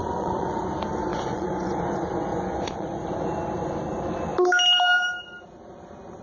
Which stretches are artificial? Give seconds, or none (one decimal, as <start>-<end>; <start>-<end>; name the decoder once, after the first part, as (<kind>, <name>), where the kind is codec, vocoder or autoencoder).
0.0-0.6 (vocoder, Vocos); 1.1-1.8; 2.3-3.0